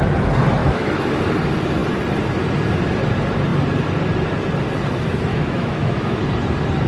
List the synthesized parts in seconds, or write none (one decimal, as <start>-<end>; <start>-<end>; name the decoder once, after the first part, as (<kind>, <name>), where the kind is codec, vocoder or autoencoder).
0.6-1.1 (autoencoder, DAC-VAE); 5.3-6.2